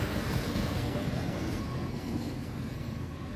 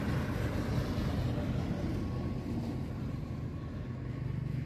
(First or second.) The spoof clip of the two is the first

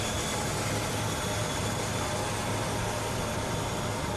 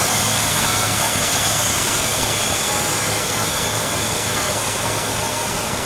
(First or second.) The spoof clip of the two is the second